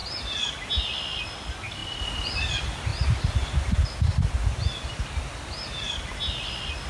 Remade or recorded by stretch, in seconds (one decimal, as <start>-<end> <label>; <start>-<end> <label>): 0.0-6.9 recorded